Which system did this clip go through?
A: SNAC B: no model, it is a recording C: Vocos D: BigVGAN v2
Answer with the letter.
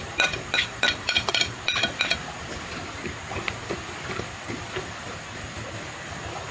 B